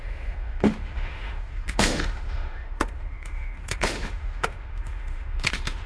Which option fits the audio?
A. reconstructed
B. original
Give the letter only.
A